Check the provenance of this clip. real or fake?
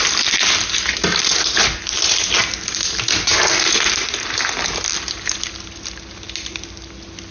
real